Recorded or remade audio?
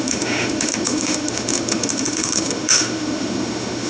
remade